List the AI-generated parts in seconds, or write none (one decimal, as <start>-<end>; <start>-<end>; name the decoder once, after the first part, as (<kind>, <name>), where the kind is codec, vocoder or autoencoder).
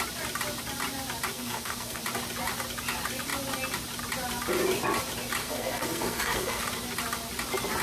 1.3-2.0 (codec, SNAC); 5.4-6.6